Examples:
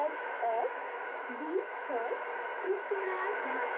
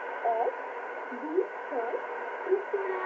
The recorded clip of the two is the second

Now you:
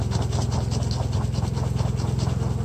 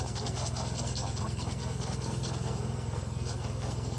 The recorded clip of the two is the first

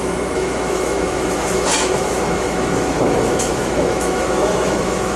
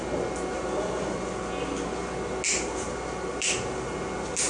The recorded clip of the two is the second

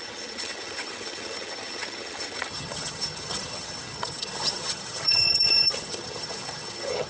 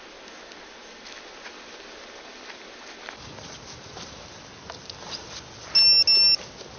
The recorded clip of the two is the second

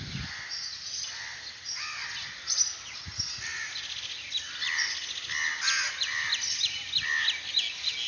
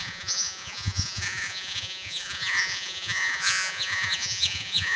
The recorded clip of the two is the first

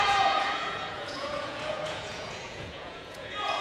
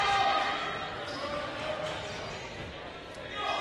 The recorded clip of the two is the second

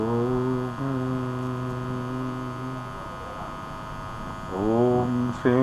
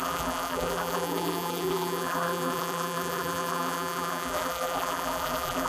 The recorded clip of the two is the first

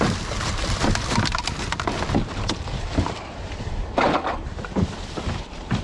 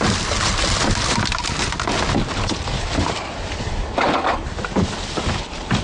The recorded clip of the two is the second